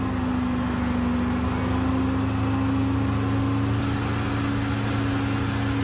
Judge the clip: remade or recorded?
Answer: recorded